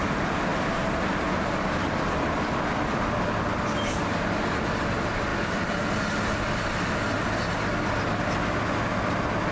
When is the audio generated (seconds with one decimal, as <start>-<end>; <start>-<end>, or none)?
none